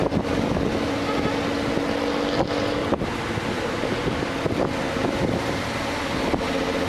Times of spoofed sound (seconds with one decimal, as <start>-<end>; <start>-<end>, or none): 2.8-6.1